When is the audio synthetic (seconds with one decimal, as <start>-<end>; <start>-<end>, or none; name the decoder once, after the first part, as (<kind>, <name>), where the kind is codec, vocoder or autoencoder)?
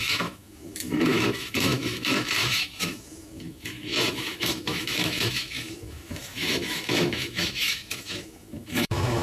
0.0-9.2 (autoencoder, DAC-VAE)